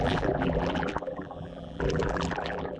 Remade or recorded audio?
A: remade